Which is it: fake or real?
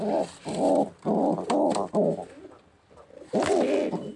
real